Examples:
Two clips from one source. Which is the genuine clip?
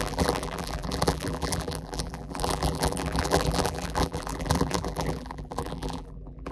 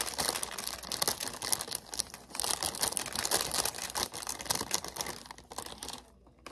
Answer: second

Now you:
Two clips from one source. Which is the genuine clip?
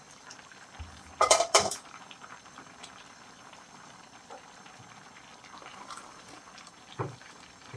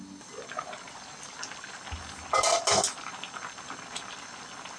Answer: second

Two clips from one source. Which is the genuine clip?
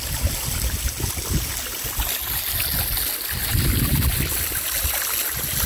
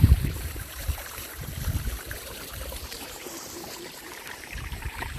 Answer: first